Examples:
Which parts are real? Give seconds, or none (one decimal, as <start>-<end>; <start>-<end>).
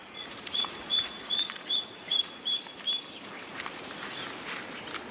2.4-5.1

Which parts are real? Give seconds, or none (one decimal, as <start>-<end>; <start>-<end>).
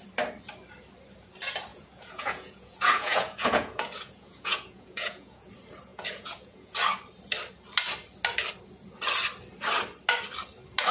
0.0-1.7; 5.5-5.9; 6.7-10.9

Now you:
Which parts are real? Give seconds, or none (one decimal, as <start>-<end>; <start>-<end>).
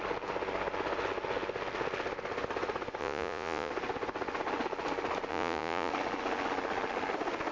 0.0-3.0; 3.7-5.3; 5.9-7.5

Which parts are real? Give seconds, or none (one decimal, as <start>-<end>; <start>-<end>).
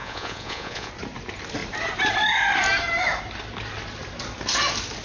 0.9-5.0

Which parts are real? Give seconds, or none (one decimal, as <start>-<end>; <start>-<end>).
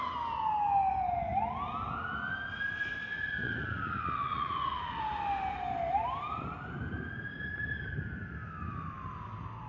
0.0-3.4; 5.0-9.7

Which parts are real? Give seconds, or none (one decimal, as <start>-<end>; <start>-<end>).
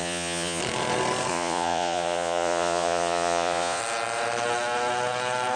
0.6-1.3; 3.8-5.6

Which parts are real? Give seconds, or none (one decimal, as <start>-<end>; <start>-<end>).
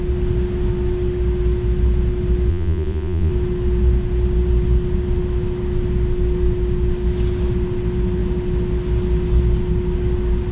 0.0-2.5; 3.3-10.5